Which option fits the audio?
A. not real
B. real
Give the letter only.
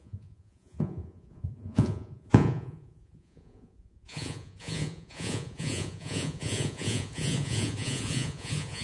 A